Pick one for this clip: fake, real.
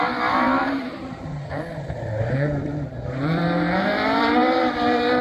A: fake